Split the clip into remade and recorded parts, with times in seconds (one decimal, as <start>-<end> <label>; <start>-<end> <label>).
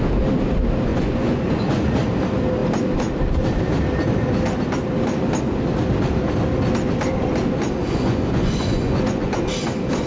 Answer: 0.0-0.9 recorded; 0.9-1.9 remade; 1.9-7.8 recorded; 7.8-9.4 remade; 9.4-10.1 recorded